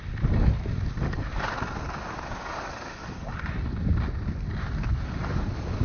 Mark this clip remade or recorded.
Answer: recorded